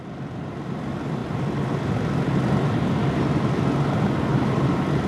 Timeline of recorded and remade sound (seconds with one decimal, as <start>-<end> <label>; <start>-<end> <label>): 0.0-4.3 recorded; 4.3-5.1 remade